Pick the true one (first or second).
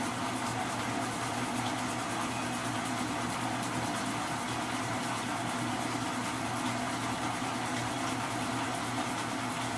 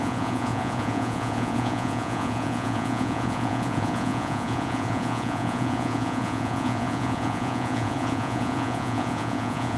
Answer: first